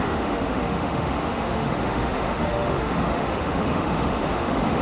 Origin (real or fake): fake